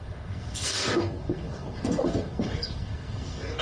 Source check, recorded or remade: remade